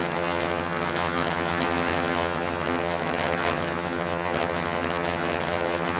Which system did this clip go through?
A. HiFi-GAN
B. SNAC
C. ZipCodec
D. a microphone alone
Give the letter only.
A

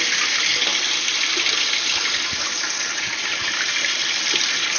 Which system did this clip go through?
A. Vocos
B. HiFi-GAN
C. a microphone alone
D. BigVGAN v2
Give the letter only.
C